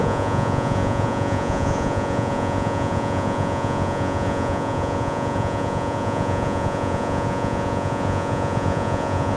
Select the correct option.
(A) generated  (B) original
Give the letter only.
A